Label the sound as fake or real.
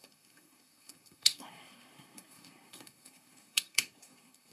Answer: fake